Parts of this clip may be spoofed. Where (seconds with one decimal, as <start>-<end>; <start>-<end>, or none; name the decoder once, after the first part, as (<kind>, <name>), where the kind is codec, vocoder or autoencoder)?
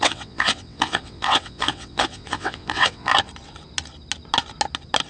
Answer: 0.0-3.1 (vocoder, WaveNeXt)